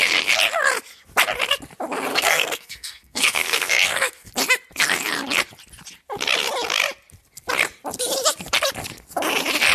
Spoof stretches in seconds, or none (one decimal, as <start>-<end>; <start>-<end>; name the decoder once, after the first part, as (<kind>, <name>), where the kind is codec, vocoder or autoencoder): 2.1-4.3 (codec, SNAC)